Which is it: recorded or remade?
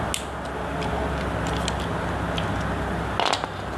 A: recorded